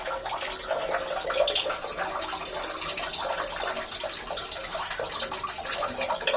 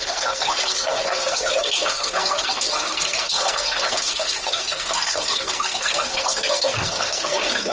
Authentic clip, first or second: first